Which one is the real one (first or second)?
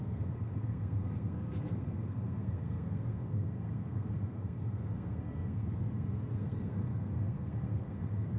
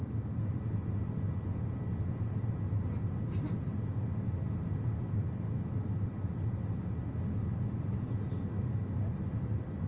second